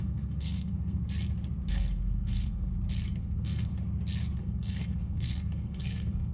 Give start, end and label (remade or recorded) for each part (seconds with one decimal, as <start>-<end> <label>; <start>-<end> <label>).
0.0-1.0 remade; 1.0-1.7 recorded; 1.7-2.7 remade; 2.7-3.2 recorded; 3.2-3.7 remade; 3.7-4.4 recorded; 4.4-6.3 remade